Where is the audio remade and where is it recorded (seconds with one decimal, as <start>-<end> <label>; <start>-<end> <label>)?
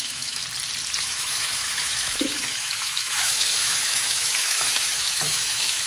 0.0-0.4 remade; 0.4-1.0 recorded; 1.0-5.9 remade